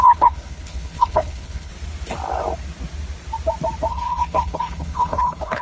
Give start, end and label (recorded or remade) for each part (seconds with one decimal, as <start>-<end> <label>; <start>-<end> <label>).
0.0-1.7 remade; 1.7-3.9 recorded; 3.9-5.6 remade